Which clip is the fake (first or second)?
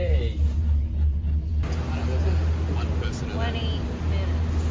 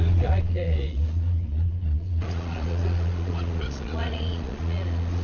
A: second